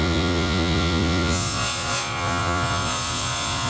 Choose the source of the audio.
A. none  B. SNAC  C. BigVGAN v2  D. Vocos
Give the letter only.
D